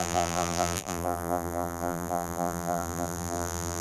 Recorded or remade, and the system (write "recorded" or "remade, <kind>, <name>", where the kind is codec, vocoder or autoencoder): remade, vocoder, BigVGAN v2